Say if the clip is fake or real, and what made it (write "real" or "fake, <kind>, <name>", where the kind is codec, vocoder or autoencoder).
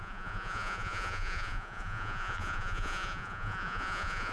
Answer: fake, vocoder, Vocos